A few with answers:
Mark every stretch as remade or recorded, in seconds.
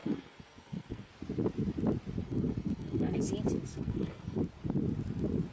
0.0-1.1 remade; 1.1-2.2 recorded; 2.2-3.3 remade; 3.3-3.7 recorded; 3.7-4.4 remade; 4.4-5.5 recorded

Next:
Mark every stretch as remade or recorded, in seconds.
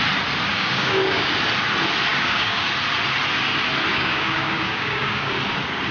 0.0-0.5 recorded; 0.5-1.3 remade; 1.3-2.1 recorded; 2.1-2.6 remade; 2.6-3.9 recorded; 3.9-5.3 remade; 5.3-5.9 recorded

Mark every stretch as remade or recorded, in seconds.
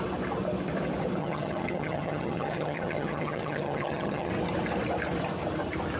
0.0-1.2 recorded; 1.2-4.3 remade; 4.3-6.0 recorded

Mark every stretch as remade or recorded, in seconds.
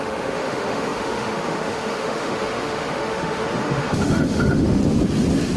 0.0-4.8 remade; 4.8-5.6 recorded